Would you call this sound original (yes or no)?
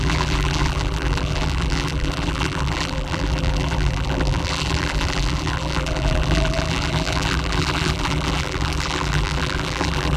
no